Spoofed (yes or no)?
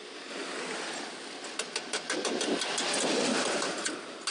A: no